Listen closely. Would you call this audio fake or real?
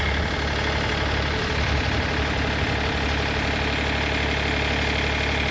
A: real